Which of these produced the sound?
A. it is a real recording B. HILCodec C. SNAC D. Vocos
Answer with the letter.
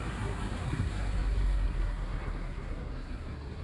C